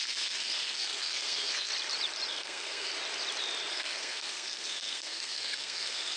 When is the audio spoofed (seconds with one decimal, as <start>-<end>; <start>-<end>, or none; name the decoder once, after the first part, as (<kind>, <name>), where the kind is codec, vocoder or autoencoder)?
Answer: 0.0-1.7 (codec, SNAC); 2.3-2.9; 3.7-6.2